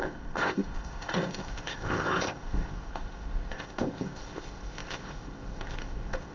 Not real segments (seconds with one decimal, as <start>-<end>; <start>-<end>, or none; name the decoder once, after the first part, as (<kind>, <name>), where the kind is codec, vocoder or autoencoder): 0.0-6.3 (codec, ZipCodec)

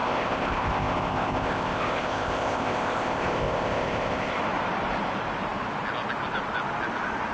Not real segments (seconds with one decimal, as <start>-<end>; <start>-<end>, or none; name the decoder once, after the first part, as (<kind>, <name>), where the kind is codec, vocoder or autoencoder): 0.0-4.4 (codec, ZipCodec)

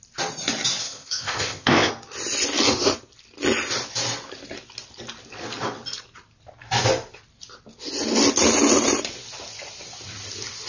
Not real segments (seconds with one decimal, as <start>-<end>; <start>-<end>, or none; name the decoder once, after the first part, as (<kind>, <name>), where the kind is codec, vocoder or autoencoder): 0.8-1.9 (codec, ZipCodec)

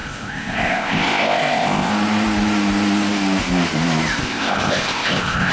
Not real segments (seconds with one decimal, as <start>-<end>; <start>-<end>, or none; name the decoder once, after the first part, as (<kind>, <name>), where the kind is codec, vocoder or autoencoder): 0.0-1.9 (codec, ZipCodec); 4.2-5.5

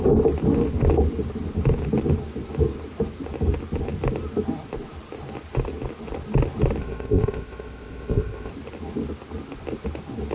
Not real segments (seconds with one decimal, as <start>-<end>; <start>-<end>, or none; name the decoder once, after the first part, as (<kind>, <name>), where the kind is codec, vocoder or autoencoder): 6.8-8.5 (codec, ZipCodec)

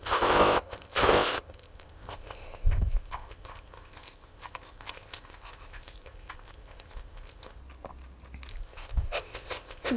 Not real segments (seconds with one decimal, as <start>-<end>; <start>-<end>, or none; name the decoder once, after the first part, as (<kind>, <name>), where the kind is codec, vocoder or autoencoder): 0.0-7.6 (codec, ZipCodec); 8.5-10.0

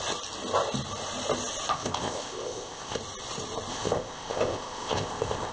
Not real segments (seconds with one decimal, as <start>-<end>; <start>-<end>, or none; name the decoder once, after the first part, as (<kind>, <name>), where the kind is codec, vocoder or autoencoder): 1.7-3.0 (codec, ZipCodec); 3.7-5.5

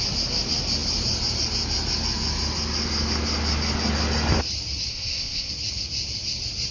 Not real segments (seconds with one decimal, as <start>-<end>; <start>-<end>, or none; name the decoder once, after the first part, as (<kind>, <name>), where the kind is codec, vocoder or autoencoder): 4.9-5.5 (codec, ZipCodec)